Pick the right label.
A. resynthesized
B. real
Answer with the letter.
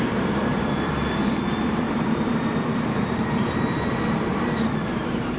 A